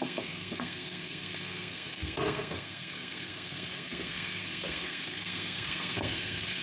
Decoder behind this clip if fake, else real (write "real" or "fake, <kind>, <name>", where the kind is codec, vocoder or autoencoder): fake, codec, SNAC